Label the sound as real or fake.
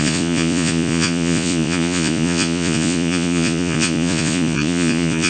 fake